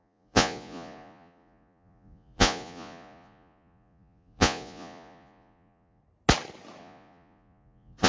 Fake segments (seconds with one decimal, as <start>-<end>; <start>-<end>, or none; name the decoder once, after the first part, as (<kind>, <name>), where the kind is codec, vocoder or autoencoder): 0.0-6.0 (vocoder, Vocos); 6.8-8.1